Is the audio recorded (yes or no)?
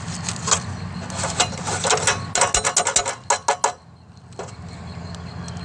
yes